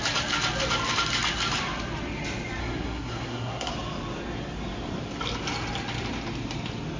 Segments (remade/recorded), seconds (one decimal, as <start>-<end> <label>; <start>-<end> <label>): 0.0-2.6 recorded; 2.6-3.7 remade; 3.7-7.0 recorded